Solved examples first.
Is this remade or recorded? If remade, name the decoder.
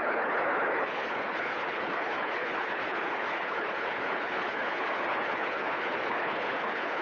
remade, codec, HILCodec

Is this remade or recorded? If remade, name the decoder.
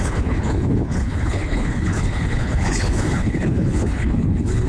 remade, codec, HILCodec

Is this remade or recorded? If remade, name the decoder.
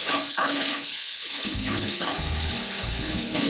remade, codec, HILCodec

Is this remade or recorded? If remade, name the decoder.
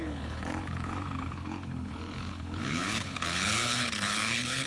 remade, codec, HILCodec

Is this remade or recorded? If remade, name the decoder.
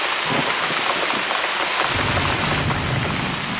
recorded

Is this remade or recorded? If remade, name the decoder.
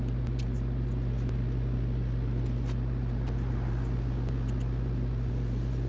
recorded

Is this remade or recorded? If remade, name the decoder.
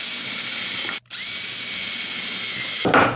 recorded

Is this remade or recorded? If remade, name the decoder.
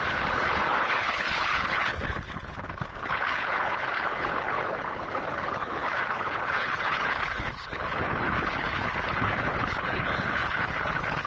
remade, codec, HILCodec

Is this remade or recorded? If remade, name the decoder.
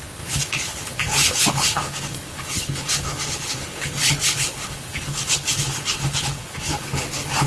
remade, codec, HILCodec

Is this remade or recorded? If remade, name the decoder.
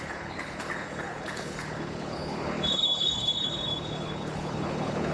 remade, codec, HILCodec